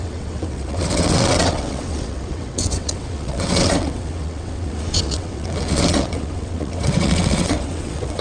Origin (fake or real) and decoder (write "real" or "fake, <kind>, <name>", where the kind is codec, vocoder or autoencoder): fake, vocoder, WaveNeXt